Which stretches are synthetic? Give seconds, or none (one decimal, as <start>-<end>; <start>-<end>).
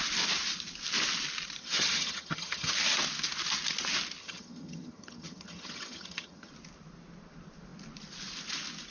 1.6-2.7; 4.2-6.5